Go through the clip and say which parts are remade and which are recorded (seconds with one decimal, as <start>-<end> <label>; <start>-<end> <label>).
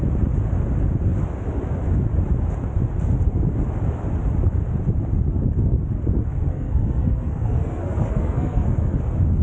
0.0-6.5 recorded; 6.5-9.0 remade; 9.0-9.4 recorded